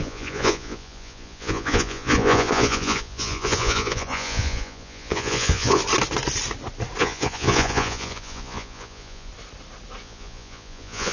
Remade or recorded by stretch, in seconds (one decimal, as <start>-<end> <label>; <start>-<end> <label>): 0.0-5.8 remade; 5.8-7.0 recorded; 7.0-9.3 remade; 9.3-10.0 recorded; 10.0-11.1 remade